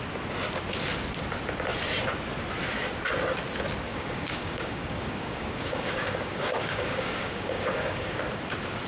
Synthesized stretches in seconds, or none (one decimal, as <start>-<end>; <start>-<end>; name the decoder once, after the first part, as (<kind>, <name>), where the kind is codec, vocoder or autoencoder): 3.9-8.2 (codec, DAC)